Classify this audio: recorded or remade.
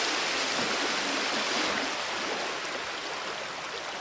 recorded